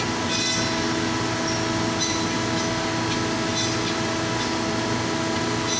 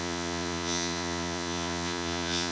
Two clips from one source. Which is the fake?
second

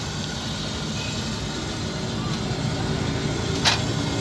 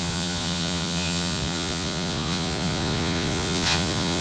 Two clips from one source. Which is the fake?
second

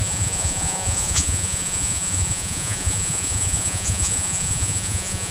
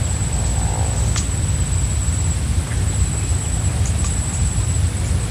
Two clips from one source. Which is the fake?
first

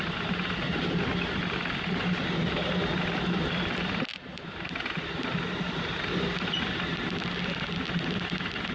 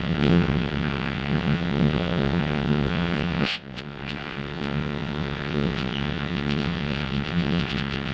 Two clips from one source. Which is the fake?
second